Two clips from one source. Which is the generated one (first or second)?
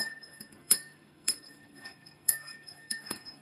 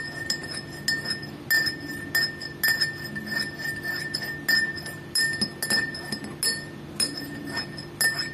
first